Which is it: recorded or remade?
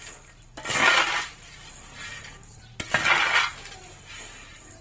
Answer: recorded